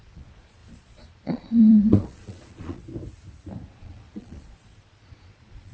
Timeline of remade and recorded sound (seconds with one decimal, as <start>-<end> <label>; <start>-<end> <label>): 0.0-2.8 remade; 2.8-3.7 recorded; 3.7-5.7 remade